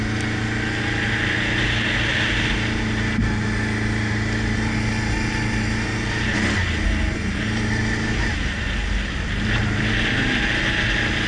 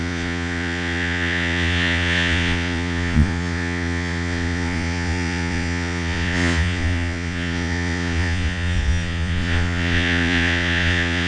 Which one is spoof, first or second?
second